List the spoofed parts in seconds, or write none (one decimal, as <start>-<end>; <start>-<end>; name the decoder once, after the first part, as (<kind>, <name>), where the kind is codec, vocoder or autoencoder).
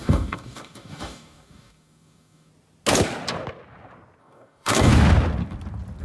0.0-2.5 (codec, DAC); 4.2-4.9